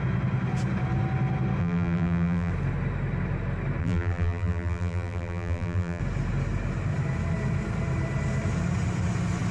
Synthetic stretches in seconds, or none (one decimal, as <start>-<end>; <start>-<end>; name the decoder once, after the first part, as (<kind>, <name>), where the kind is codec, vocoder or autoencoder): 1.6-2.5 (vocoder, BigVGAN v2); 3.8-6.0